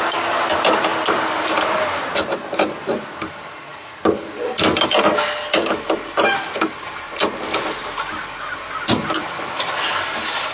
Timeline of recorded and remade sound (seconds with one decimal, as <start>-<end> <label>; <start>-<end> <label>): 0.0-0.9 recorded; 0.9-2.8 remade; 2.8-7.8 recorded; 7.8-9.3 remade; 9.3-10.5 recorded